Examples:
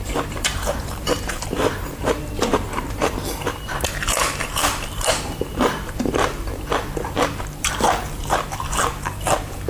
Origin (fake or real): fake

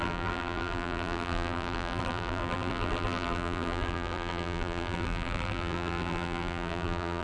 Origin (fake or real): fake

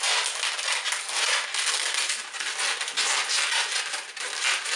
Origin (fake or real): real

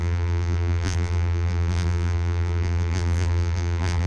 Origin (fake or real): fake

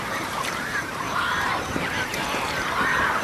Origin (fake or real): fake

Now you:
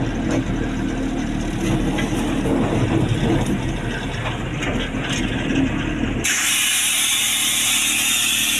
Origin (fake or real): real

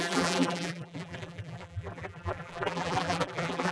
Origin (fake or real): fake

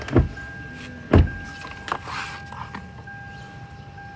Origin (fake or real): real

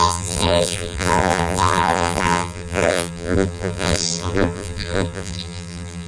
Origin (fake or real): fake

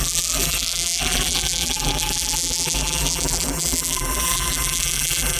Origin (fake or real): fake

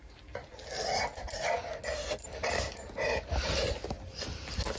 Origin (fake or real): real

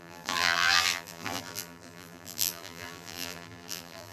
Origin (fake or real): fake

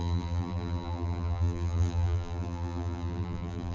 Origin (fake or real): fake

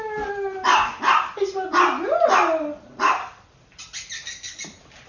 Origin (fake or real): real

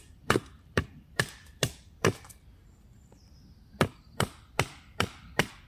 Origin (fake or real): fake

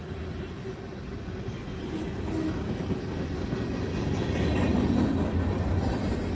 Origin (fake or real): real